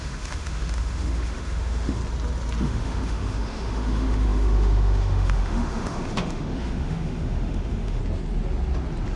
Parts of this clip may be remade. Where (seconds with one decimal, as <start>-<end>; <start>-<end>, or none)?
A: 0.0-2.0; 2.6-8.0